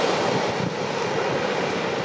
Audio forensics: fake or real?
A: real